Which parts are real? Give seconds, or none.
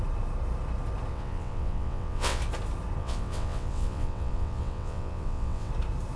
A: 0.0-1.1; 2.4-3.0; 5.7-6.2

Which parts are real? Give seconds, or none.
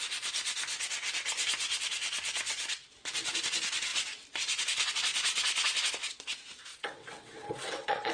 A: 0.0-6.7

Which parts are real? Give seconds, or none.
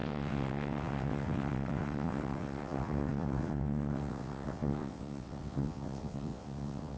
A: none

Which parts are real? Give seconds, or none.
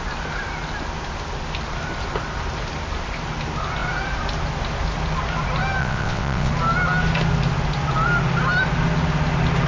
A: 0.0-5.8; 6.5-9.7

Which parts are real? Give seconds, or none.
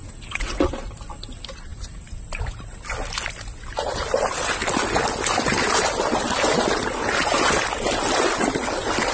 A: 0.7-9.1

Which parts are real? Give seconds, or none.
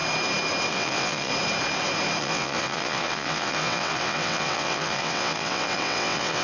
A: 0.0-0.7; 1.3-2.2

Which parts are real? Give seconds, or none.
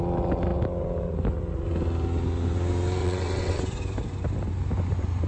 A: 0.0-3.0; 3.6-5.3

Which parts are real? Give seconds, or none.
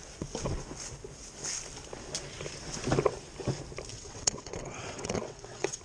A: 0.0-3.9